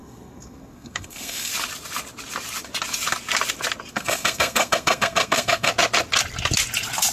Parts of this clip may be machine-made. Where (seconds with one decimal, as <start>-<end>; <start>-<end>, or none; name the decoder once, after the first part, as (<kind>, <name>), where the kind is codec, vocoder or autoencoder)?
0.0-1.5 (codec, SNAC); 3.9-5.7